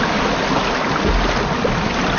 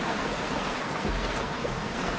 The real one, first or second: first